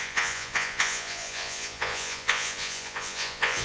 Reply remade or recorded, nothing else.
remade